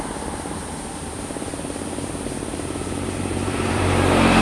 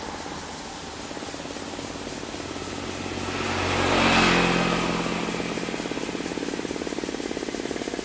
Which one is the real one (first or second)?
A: second